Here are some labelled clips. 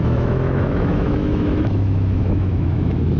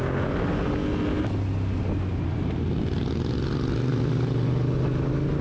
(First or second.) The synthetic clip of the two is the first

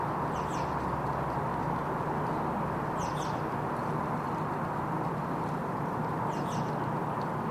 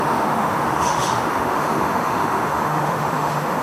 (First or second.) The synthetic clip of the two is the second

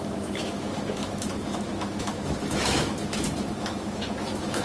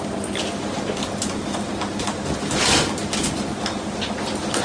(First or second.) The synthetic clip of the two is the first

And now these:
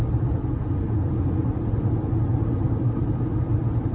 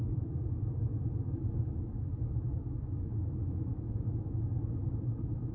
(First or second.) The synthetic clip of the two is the second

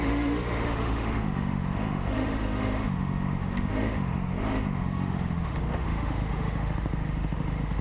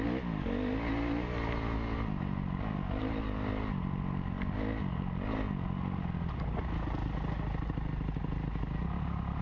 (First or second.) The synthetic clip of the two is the first